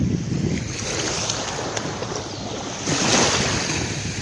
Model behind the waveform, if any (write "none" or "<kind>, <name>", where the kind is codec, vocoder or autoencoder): none